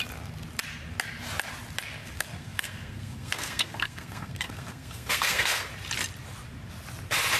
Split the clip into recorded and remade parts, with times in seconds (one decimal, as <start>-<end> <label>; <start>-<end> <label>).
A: 0.0-2.0 recorded; 2.0-5.7 remade; 5.7-7.4 recorded